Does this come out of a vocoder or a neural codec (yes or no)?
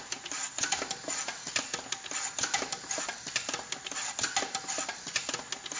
no